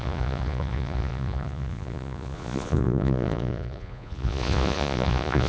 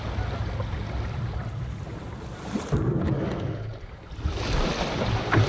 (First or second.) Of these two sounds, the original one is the second